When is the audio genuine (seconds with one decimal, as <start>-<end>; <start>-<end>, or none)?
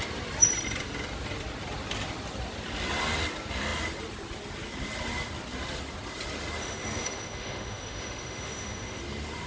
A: 0.0-6.6; 9.0-9.5